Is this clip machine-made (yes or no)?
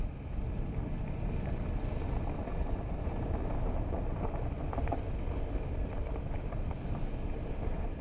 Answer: no